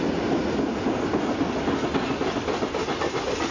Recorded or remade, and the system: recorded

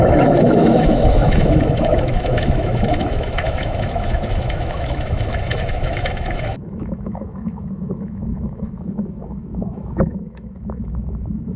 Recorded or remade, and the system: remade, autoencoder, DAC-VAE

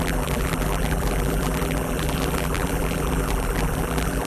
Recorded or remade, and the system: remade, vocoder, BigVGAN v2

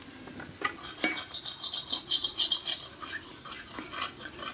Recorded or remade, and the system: recorded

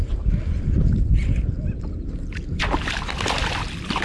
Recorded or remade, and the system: recorded